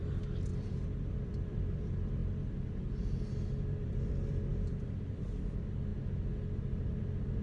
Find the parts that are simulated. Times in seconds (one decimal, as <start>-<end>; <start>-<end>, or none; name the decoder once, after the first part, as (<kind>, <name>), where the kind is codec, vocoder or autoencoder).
0.0-0.5 (vocoder, BigVGAN v2); 1.1-2.2; 3.7-5.9; 7.0-7.4